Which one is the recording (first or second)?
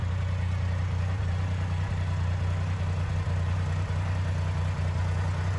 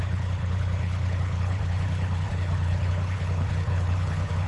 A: first